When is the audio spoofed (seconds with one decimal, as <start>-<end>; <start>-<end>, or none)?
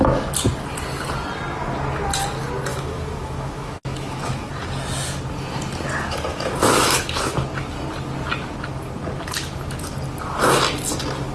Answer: 2.7-4.5; 6.3-7.1